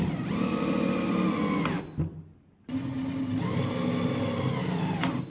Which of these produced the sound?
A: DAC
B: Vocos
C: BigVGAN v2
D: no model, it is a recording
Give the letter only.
D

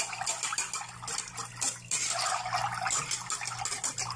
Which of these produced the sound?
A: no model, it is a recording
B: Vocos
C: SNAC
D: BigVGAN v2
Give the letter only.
A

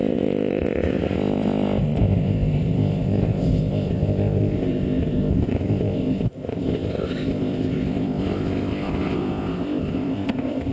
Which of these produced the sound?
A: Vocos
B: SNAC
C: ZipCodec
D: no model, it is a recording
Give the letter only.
C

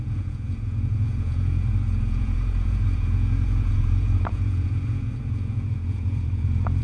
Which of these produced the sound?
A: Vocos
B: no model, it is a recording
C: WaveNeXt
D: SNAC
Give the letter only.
A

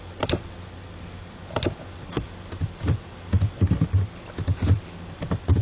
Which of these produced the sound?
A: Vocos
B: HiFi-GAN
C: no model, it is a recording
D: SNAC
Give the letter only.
C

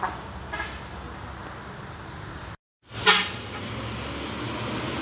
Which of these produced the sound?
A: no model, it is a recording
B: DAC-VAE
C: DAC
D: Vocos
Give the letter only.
A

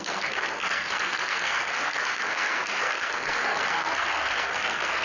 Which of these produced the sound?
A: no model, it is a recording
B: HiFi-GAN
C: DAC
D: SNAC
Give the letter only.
D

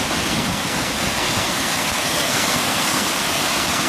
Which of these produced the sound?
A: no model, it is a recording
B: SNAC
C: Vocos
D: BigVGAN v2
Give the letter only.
B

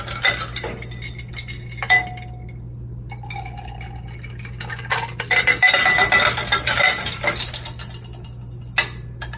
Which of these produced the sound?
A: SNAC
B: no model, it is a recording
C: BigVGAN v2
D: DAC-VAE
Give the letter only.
B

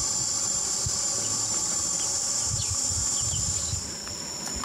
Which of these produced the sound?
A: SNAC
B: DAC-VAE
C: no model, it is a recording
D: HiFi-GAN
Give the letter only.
C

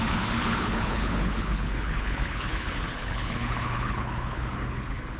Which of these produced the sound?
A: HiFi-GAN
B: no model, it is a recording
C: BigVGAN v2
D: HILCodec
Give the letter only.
D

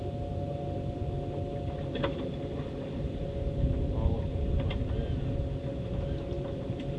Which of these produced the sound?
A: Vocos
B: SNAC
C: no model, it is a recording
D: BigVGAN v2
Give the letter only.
C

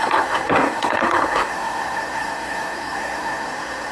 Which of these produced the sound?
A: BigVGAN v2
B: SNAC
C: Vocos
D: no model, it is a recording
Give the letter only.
B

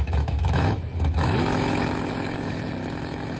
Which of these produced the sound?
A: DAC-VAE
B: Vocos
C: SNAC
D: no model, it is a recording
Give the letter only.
A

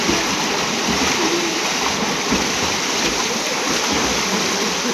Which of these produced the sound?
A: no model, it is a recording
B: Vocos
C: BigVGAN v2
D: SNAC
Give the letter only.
A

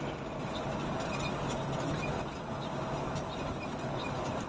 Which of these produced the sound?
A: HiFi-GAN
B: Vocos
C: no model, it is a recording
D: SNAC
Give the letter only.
C